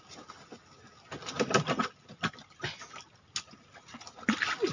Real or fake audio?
real